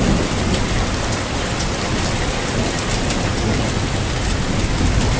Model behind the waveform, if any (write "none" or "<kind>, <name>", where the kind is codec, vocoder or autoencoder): none